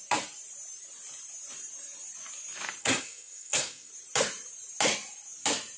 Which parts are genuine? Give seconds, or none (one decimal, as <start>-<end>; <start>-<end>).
0.0-2.8; 3.9-5.8